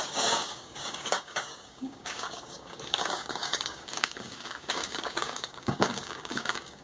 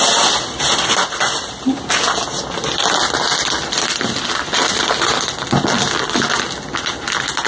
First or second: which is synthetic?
first